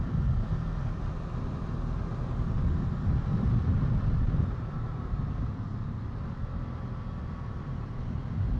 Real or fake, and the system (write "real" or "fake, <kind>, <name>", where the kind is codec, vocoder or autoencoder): fake, vocoder, BigVGAN v2